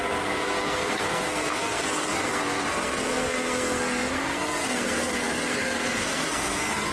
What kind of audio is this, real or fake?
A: fake